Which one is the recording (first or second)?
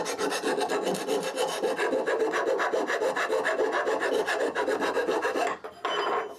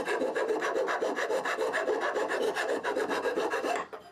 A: first